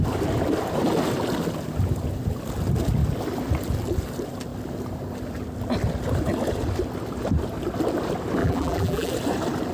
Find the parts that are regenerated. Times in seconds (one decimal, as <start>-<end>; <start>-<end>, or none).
8.4-9.1